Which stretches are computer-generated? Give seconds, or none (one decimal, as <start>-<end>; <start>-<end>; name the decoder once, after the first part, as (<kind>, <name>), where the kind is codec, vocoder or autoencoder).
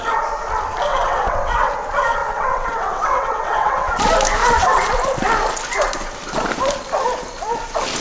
0.9-1.7 (vocoder, WaveNeXt); 2.2-4.0; 4.4-4.9